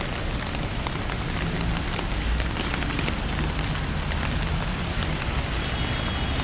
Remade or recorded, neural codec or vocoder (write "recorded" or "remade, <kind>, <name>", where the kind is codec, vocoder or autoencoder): recorded